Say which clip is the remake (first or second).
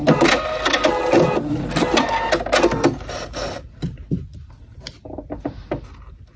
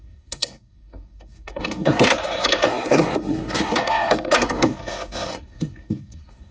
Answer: second